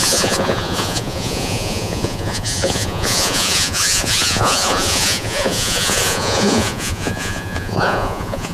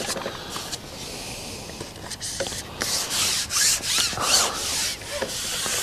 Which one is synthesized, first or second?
first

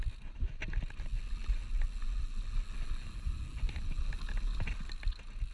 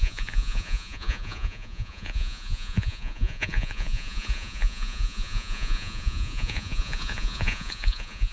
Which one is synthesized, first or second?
second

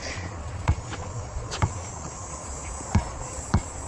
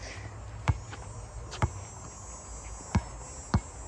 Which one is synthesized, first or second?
first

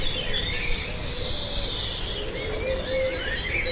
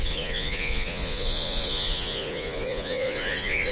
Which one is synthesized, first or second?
second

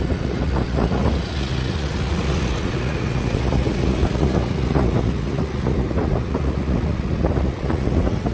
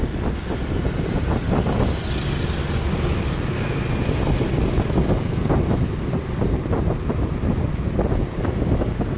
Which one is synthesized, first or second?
first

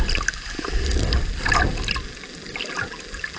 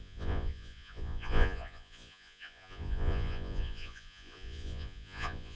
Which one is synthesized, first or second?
second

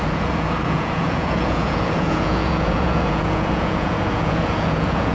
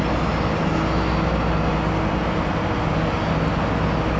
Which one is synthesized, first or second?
first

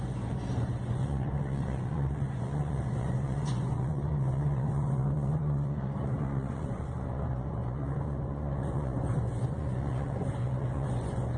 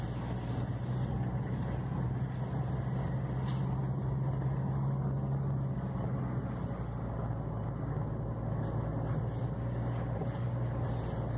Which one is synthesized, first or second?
first